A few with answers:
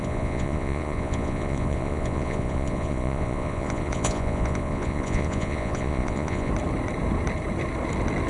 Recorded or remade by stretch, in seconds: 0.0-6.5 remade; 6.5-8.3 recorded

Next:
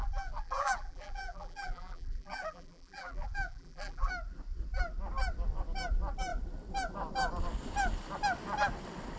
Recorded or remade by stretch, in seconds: 0.0-4.1 remade; 4.1-9.2 recorded

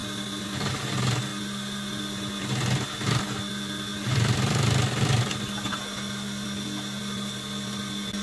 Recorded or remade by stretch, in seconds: 0.0-8.2 recorded

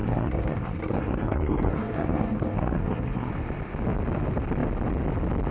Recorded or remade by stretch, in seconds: 0.0-3.3 remade; 3.3-5.5 recorded